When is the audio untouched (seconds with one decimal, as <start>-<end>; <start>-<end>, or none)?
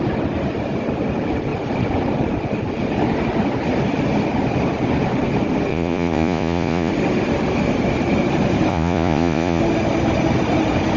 0.0-5.7; 6.9-8.7; 9.6-11.0